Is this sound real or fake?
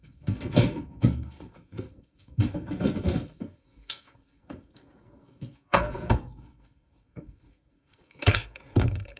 fake